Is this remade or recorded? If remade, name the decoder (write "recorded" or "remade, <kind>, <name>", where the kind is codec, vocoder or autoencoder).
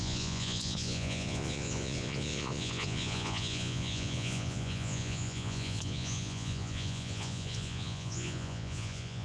remade, vocoder, Vocos